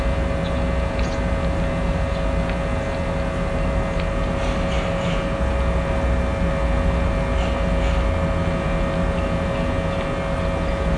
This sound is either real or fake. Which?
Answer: real